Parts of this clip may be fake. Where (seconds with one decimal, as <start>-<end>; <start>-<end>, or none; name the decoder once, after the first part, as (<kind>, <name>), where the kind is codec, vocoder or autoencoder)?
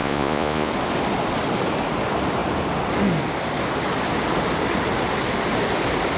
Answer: 0.0-0.7 (vocoder, Vocos)